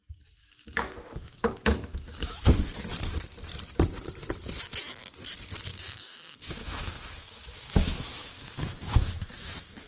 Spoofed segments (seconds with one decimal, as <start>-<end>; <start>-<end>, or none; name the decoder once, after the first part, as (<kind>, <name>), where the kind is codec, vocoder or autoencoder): 0.4-2.6 (autoencoder, DAC-VAE); 5.7-9.9